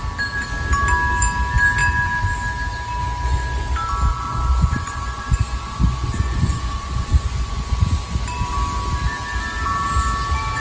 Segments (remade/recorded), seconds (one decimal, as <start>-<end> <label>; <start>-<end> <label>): 0.0-4.1 recorded; 4.1-7.7 remade; 7.7-10.6 recorded